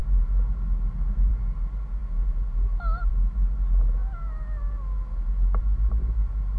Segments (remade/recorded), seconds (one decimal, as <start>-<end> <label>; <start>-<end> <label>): 0.0-6.6 recorded